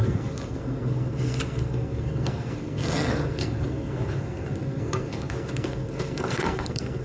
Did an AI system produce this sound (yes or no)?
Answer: yes